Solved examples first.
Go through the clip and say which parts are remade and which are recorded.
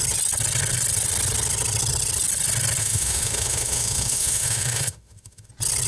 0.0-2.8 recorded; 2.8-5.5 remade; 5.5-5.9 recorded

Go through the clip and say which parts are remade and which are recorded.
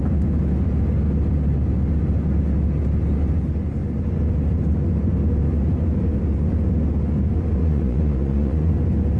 0.0-7.6 recorded; 7.6-8.7 remade; 8.7-9.2 recorded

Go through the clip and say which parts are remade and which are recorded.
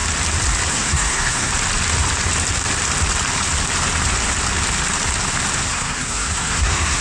0.0-0.7 recorded; 0.7-1.5 remade; 1.5-5.7 recorded; 5.7-7.0 remade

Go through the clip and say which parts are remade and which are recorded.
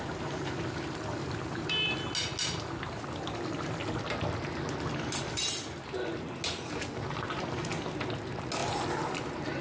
0.0-9.6 recorded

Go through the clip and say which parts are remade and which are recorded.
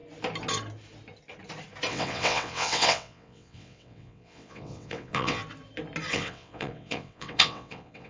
0.0-1.9 recorded; 1.9-5.4 remade; 5.4-6.1 recorded; 6.1-8.1 remade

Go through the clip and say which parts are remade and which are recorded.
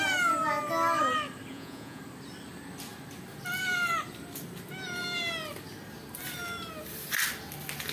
0.0-1.5 recorded; 1.5-2.0 remade; 2.0-7.9 recorded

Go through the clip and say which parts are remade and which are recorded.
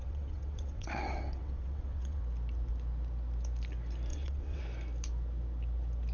0.0-2.2 remade; 2.2-4.1 recorded; 4.1-4.6 remade; 4.6-6.1 recorded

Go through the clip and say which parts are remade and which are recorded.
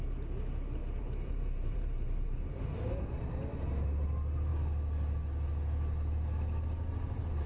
0.0-0.8 recorded; 0.8-2.6 remade; 2.6-7.5 recorded